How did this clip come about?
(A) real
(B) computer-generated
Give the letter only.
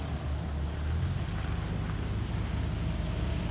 A